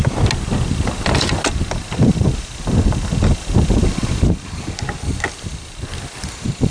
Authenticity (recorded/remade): recorded